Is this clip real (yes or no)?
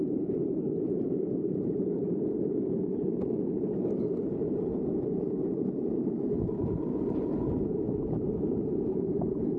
no